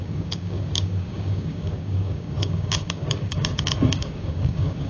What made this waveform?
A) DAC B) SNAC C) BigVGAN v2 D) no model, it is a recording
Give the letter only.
A